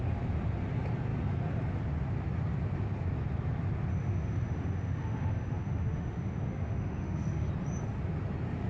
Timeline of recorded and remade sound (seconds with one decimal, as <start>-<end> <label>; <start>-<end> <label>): 0.0-3.9 recorded; 3.9-7.5 remade; 7.5-8.7 recorded